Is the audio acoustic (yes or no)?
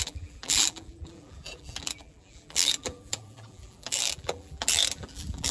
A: no